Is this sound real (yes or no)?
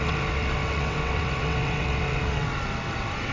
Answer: no